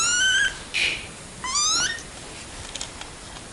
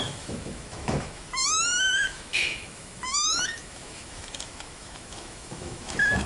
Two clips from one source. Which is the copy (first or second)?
second